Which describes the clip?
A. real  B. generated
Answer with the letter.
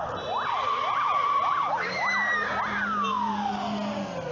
A